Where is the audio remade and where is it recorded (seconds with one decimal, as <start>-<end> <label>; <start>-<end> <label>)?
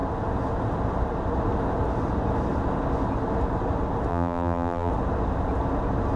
0.0-4.1 recorded; 4.1-4.9 remade; 4.9-6.2 recorded